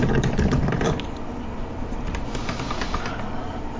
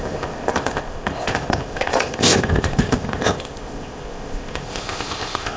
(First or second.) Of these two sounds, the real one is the first